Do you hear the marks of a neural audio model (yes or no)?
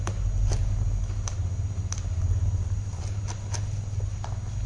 no